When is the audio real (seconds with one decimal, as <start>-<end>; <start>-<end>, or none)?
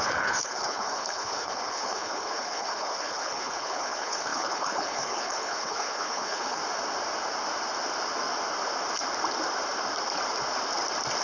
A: 6.6-11.2